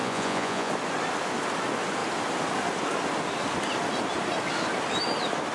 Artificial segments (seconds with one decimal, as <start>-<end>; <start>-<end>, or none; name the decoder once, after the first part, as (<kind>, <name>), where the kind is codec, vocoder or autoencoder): 0.0-0.7 (vocoder, Vocos)